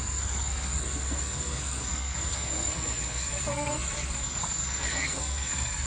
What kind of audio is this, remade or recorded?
remade